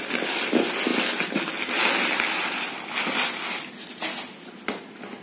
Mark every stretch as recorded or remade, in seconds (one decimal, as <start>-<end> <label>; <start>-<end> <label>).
0.0-5.2 recorded